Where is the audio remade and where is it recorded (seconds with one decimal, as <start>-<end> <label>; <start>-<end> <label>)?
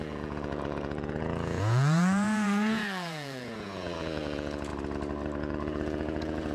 0.0-4.7 remade; 4.7-5.4 recorded; 5.4-6.5 remade